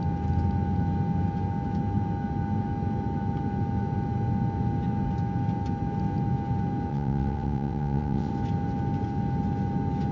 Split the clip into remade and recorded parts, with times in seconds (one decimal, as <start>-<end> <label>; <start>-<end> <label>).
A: 0.0-6.9 recorded; 6.9-8.3 remade; 8.3-10.1 recorded